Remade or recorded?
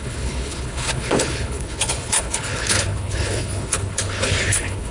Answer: remade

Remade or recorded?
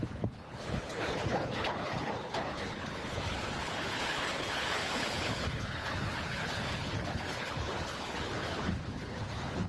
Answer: remade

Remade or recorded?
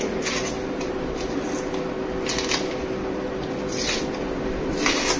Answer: recorded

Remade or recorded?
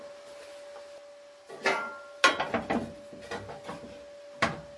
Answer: recorded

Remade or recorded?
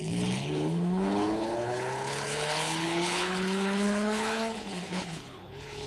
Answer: remade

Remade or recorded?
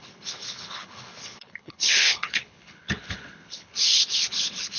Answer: remade